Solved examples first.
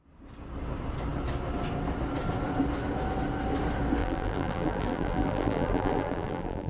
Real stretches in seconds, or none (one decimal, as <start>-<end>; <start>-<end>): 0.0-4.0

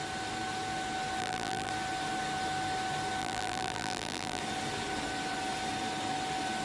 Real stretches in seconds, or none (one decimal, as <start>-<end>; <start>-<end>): 0.0-1.2; 1.7-3.2; 4.4-6.6

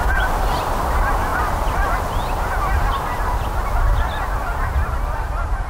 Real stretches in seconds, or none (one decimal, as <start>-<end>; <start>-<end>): 0.0-5.7

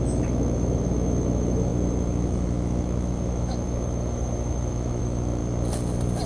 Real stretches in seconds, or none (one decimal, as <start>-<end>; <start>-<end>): 5.4-6.3

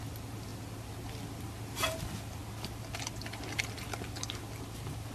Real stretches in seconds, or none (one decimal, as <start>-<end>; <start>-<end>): 0.0-5.1

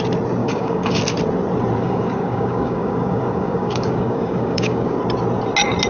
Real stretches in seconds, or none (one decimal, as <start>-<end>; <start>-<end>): 0.0-0.4; 1.0-1.8; 5.0-5.9

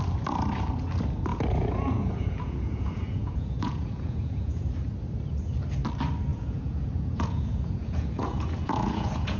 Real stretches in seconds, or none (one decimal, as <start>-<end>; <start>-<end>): 0.0-1.3; 4.7-6.3